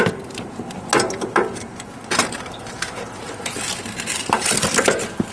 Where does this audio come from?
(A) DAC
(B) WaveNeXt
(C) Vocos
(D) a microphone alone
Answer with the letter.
D